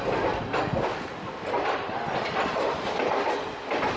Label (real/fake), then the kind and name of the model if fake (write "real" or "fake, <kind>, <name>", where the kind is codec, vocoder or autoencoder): real